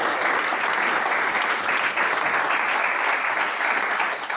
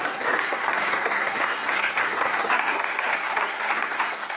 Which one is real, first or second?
first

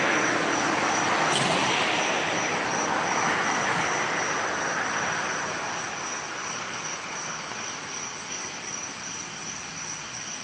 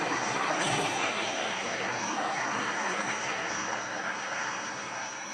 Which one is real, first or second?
first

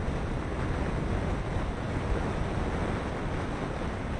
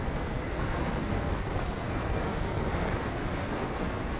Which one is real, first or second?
first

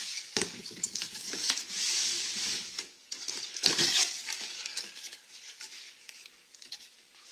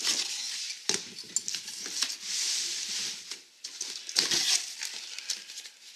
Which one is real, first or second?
second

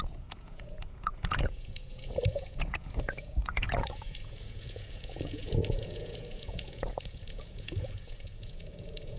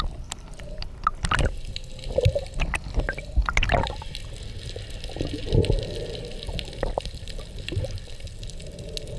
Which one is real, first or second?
second